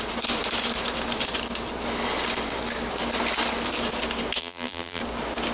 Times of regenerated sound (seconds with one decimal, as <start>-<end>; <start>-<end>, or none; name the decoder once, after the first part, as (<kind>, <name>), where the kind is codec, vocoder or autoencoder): 4.4-5.0 (vocoder, BigVGAN v2)